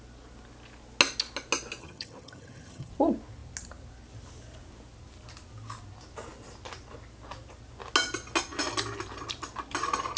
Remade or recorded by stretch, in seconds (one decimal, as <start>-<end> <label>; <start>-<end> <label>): 0.0-1.8 recorded; 1.8-2.9 remade; 2.9-10.2 recorded